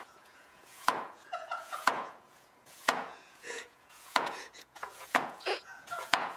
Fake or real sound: fake